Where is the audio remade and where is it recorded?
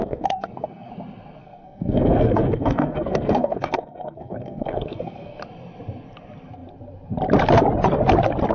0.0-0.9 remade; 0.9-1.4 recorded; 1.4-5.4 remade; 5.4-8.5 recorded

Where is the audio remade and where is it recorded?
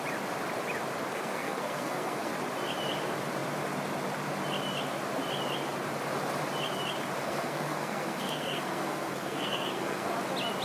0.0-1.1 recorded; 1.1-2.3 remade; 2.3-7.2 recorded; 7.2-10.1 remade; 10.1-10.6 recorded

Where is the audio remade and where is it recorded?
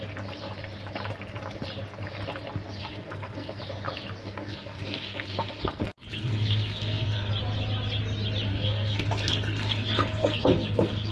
0.0-2.8 recorded; 2.8-3.6 remade; 3.6-4.2 recorded; 4.2-7.3 remade; 7.3-8.5 recorded; 8.5-11.1 remade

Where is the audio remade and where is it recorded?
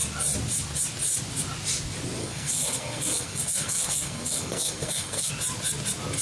0.0-2.2 recorded; 2.2-5.3 remade; 5.3-6.2 recorded